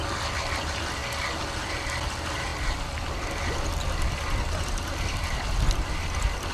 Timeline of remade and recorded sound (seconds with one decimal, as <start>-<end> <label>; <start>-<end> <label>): 0.0-6.5 recorded